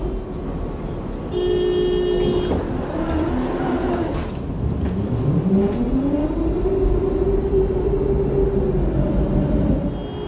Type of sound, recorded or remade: recorded